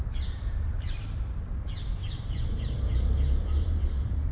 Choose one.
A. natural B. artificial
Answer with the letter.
B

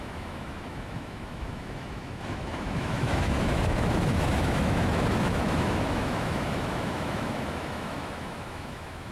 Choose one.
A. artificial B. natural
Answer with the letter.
A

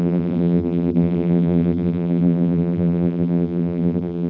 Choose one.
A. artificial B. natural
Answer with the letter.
A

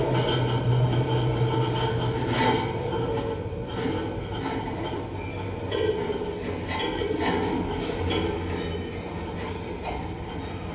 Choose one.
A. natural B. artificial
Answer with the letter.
A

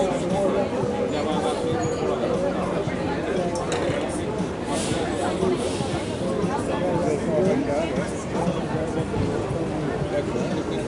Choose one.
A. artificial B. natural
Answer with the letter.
B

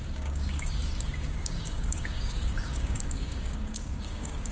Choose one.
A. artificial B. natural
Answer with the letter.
A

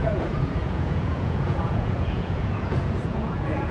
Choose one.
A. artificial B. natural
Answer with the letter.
A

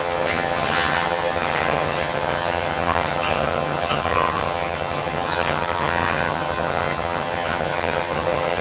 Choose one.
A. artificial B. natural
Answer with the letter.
A